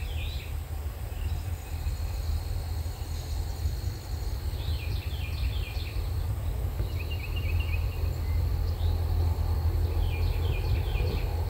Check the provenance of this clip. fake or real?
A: real